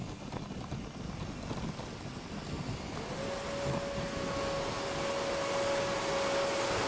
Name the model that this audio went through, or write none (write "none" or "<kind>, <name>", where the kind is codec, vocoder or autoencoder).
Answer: none